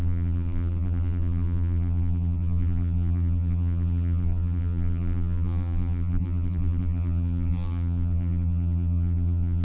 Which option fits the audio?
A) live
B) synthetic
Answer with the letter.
B